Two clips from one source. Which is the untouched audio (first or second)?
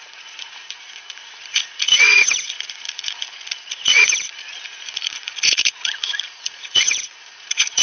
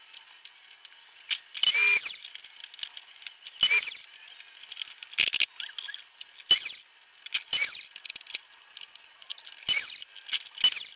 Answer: second